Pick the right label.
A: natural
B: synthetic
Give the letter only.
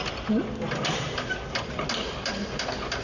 A